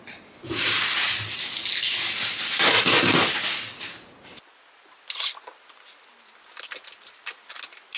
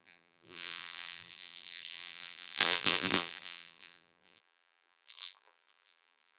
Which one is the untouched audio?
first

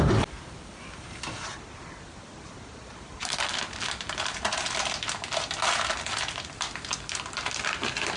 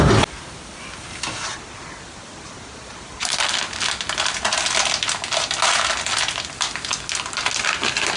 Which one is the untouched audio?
second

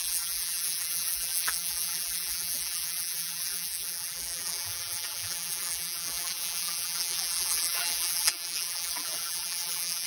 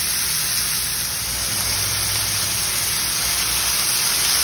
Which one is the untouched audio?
second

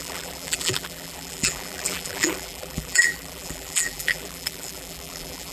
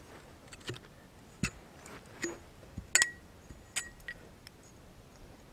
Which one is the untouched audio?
second